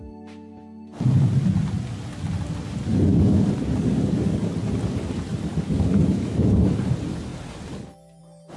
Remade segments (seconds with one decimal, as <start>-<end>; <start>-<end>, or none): 3.1-4.5; 5.5-6.8